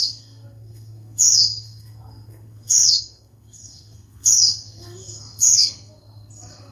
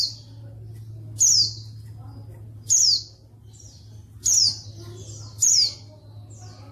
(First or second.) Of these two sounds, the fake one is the first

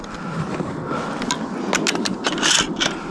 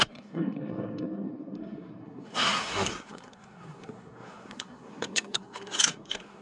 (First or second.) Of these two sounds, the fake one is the second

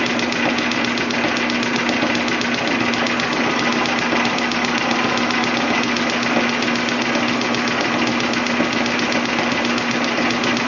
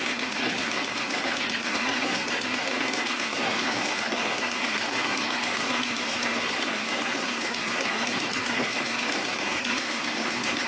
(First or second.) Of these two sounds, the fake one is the second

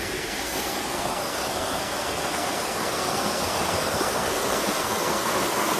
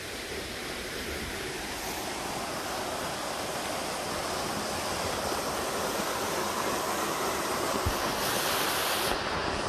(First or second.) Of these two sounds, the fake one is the first